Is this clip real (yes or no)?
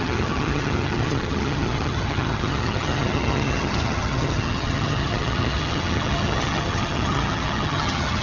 no